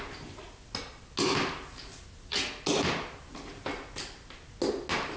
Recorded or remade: recorded